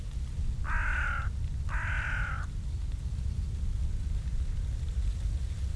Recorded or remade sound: recorded